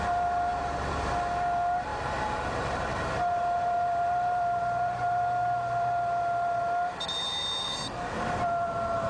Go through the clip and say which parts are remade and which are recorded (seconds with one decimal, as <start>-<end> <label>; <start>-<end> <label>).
0.0-0.5 recorded; 0.5-1.1 remade; 1.1-1.9 recorded; 1.9-6.2 remade; 6.2-9.1 recorded